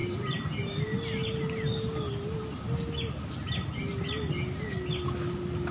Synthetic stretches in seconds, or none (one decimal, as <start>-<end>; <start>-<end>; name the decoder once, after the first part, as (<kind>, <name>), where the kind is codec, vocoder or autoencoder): none